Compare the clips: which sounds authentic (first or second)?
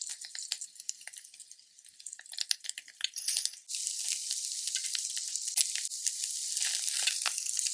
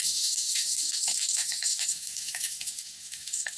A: first